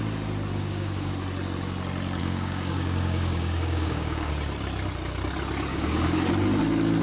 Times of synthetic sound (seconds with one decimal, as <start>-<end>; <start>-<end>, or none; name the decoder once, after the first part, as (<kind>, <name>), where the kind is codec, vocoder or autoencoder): 0.5-1.1 (codec, DAC); 2.2-4.3; 5.7-6.3